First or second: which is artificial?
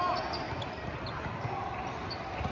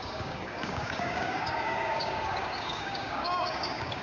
second